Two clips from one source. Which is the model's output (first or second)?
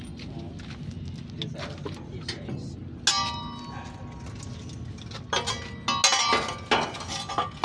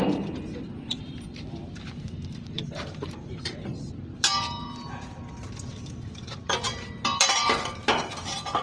second